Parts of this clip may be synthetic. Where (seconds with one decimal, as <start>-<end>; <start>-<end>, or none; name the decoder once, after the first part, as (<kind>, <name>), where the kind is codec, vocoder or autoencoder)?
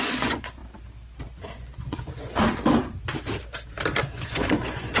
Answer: 0.0-0.6 (vocoder, Vocos); 1.5-2.4; 4.0-5.0